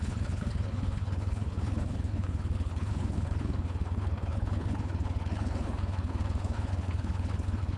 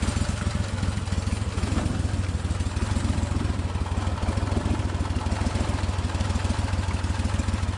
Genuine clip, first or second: second